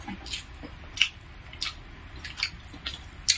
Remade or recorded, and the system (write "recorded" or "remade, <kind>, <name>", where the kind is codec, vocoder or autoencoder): recorded